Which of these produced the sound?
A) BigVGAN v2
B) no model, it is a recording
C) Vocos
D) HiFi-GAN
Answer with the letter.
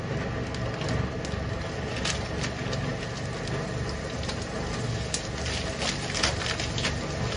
B